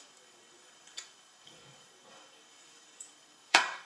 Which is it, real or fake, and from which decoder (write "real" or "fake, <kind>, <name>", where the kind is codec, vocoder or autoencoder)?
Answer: fake, codec, DAC